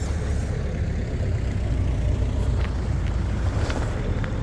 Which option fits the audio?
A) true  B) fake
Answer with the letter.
B